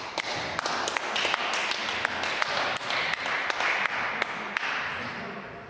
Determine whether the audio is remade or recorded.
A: recorded